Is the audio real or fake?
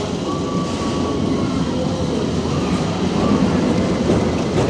real